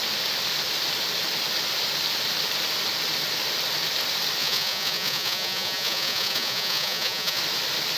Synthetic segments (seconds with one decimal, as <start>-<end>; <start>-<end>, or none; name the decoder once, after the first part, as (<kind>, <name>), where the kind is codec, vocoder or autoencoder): 4.4-7.4 (vocoder, Vocos)